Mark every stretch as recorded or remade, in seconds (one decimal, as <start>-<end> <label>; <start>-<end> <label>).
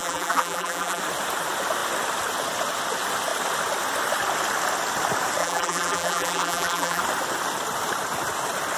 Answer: 0.0-1.0 remade; 1.0-5.4 recorded; 5.4-7.0 remade; 7.0-8.8 recorded